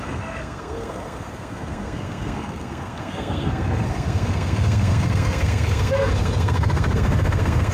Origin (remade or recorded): remade